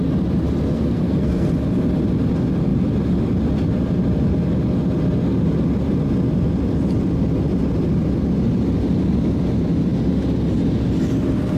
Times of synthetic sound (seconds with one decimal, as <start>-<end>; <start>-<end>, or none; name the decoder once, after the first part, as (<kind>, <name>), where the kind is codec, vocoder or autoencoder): 0.7-1.5 (codec, SNAC)